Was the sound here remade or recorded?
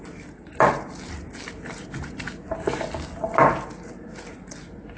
recorded